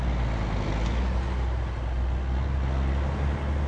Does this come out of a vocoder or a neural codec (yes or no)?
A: no